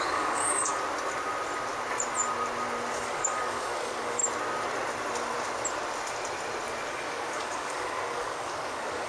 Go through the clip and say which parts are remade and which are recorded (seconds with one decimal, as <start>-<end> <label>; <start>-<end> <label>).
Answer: 0.0-0.7 remade; 0.7-2.9 recorded; 2.9-4.2 remade; 4.2-6.9 recorded; 6.9-9.1 remade